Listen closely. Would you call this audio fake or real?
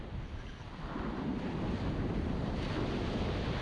real